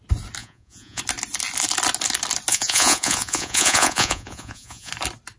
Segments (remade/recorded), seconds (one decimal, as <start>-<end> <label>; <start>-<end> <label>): 0.0-0.4 recorded; 0.4-1.0 remade; 1.0-2.5 recorded; 2.5-4.9 remade; 4.9-5.4 recorded